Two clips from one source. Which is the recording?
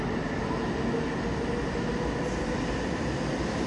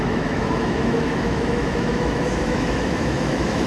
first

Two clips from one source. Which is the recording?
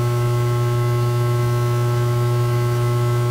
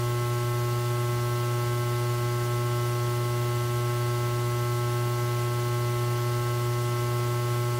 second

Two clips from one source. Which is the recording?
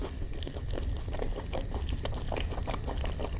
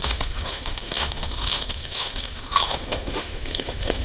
first